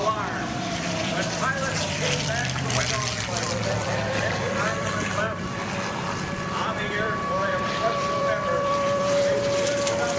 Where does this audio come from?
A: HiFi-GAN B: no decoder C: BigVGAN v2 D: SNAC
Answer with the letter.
C